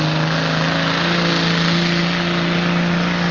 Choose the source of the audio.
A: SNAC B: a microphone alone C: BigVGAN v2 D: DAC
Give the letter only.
B